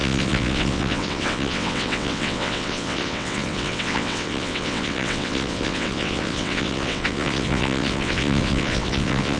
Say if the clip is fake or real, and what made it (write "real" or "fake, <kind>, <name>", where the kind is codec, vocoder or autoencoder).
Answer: fake, vocoder, WaveNeXt